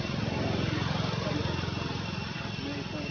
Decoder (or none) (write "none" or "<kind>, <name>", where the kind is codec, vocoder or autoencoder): none